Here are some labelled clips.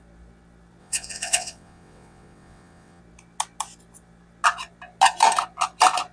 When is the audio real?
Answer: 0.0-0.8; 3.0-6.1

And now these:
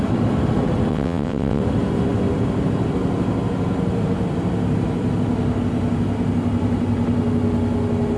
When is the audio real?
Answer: 0.0-0.9; 1.6-8.2

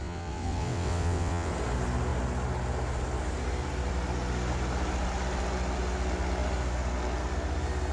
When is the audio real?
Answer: 1.5-7.9

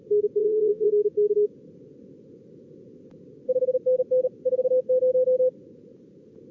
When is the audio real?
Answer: 0.0-0.4; 0.9-6.5

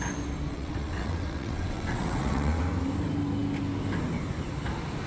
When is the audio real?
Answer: 0.0-0.5; 2.6-5.1

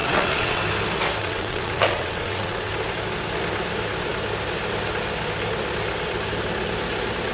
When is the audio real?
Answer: 0.6-1.2; 2.7-7.3